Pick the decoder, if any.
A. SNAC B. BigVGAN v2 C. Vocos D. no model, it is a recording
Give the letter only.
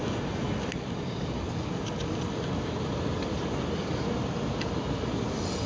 D